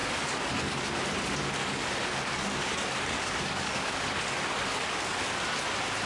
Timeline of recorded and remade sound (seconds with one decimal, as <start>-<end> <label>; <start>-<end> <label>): 0.0-0.7 remade; 0.7-1.6 recorded; 1.6-5.3 remade; 5.3-6.1 recorded

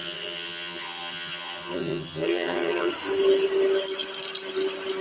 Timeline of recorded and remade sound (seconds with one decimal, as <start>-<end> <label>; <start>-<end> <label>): 0.0-2.9 remade; 2.9-5.0 recorded

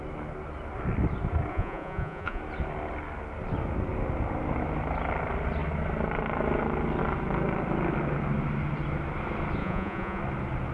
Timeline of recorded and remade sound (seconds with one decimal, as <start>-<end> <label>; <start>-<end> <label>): 0.0-1.5 recorded; 1.5-2.4 remade; 2.4-9.6 recorded; 9.6-10.2 remade; 10.2-10.7 recorded

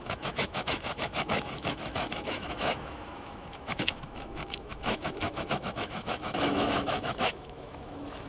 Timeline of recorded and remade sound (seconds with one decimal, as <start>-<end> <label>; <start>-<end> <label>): 0.0-8.3 remade

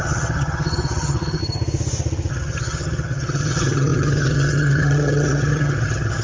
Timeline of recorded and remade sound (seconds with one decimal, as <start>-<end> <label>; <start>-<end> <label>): 0.0-1.4 remade; 1.4-2.3 recorded; 2.3-6.2 remade